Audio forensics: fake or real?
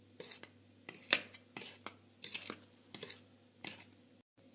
real